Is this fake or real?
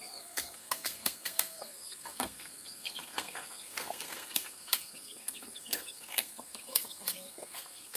fake